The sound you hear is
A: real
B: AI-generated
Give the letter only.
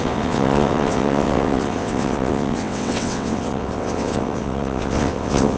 B